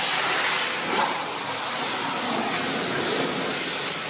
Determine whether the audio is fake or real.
fake